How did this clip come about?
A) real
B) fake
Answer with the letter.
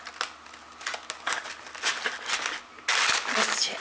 A